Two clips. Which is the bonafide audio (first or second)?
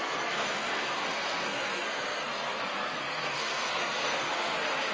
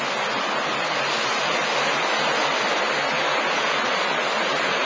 second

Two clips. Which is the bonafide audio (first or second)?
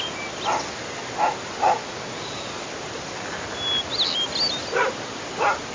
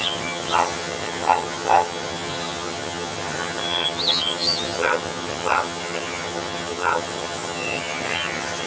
first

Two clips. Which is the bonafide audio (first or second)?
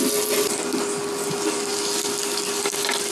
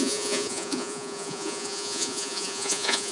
first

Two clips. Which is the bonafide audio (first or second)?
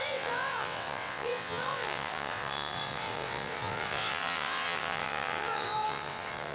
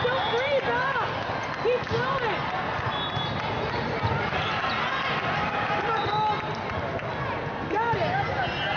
second